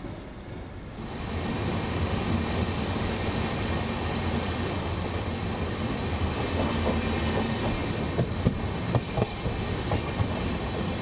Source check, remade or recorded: recorded